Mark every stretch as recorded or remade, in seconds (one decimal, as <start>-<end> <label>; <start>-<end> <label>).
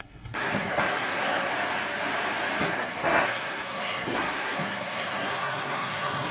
0.0-1.5 remade; 1.5-2.6 recorded; 2.6-6.3 remade